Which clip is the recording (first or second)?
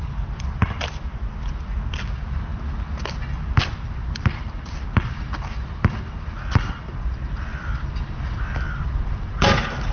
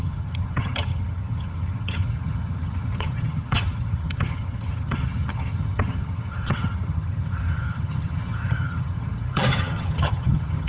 first